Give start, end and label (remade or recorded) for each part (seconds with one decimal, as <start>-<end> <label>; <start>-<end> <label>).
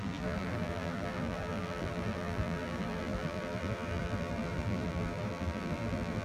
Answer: 0.0-6.2 remade